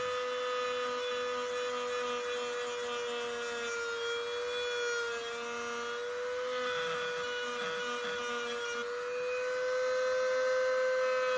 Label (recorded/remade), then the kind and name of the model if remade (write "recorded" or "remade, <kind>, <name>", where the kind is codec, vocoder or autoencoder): recorded